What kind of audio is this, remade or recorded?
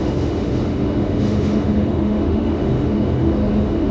remade